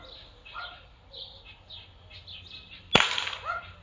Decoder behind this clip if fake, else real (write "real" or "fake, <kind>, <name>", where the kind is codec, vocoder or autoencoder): real